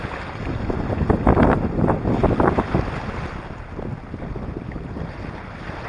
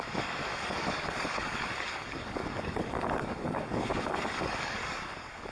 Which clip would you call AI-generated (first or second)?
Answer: second